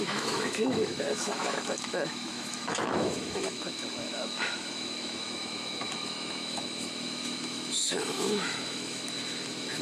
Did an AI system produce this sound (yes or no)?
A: yes